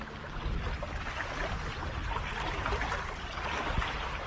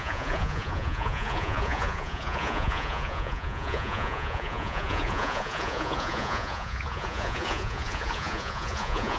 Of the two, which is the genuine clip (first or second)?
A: first